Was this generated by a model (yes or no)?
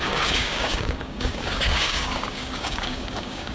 yes